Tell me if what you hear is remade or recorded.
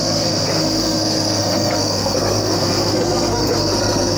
remade